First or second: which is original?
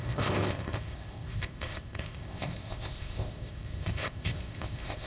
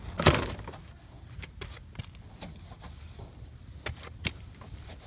second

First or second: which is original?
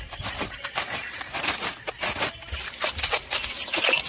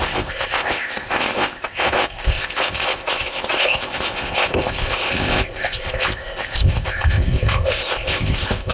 first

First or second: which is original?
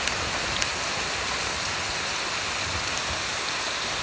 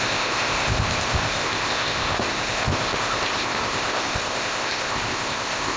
first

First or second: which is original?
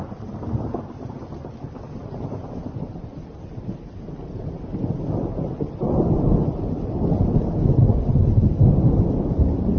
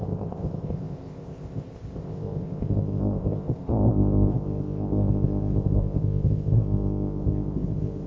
first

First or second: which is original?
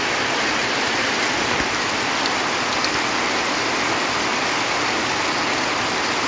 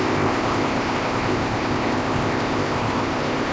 first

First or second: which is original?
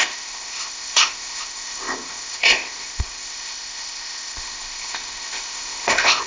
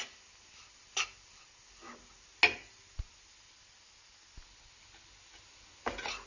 second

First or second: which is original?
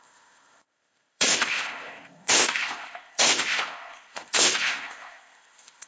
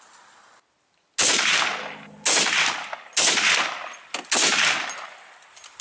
second